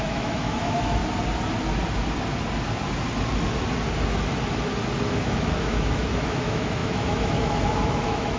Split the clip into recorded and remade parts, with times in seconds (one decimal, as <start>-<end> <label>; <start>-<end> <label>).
0.0-1.0 remade; 1.0-5.1 recorded; 5.1-8.4 remade

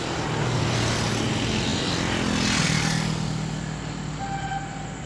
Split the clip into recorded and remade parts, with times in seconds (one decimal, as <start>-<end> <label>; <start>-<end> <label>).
0.0-5.1 recorded

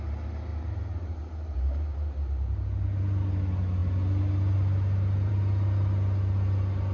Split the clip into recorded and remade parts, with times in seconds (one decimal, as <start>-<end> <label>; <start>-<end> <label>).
0.0-6.9 recorded

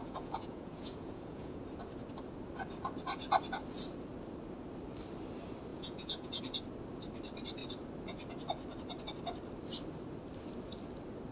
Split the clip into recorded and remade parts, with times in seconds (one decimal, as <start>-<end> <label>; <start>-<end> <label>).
0.0-1.6 remade; 1.6-5.7 recorded; 5.7-6.4 remade; 6.4-11.3 recorded

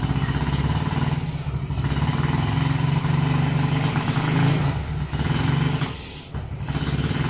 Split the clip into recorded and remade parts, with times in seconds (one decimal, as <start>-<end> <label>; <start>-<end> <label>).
0.0-7.3 recorded

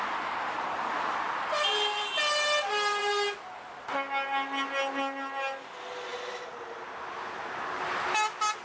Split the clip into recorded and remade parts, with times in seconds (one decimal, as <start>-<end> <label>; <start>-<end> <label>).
0.0-8.6 recorded

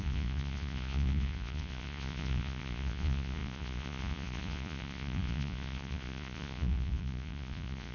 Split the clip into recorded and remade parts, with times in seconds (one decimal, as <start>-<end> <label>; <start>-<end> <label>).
0.0-7.9 remade